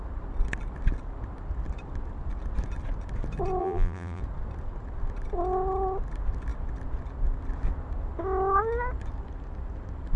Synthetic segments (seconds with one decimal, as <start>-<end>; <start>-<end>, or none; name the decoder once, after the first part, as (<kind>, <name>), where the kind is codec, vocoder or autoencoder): 3.6-4.2 (vocoder, BigVGAN v2)